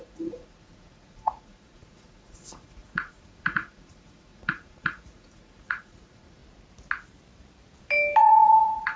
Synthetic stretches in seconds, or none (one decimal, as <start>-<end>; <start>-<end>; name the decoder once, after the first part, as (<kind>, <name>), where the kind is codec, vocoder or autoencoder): 0.0-6.4 (vocoder, Vocos); 8.2-9.0